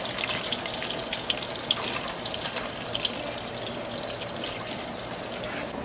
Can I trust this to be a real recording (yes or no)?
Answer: yes